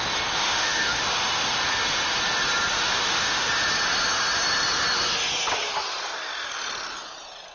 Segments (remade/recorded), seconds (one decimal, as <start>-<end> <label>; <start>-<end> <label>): 0.0-0.4 recorded; 0.4-1.0 remade; 1.0-2.7 recorded; 2.7-3.5 remade; 3.5-7.5 recorded

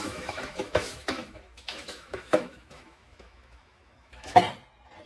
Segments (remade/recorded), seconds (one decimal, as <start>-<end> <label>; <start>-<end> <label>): 0.0-4.4 remade; 4.4-5.1 recorded

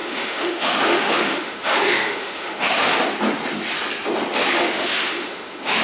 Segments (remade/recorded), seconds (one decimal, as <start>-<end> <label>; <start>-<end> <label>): 0.0-3.0 remade; 3.0-4.4 recorded; 4.4-5.8 remade

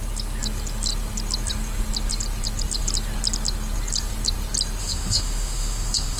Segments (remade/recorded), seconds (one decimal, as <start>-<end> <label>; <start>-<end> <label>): 0.0-4.8 recorded; 4.8-6.2 remade